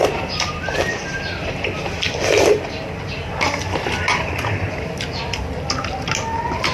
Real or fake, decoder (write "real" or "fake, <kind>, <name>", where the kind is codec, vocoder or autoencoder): real